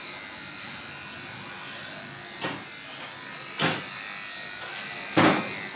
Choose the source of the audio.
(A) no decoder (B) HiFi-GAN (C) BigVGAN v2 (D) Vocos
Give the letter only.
A